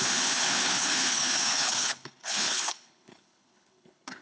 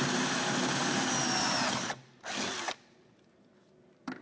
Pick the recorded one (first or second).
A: second